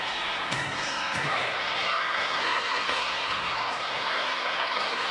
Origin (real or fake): fake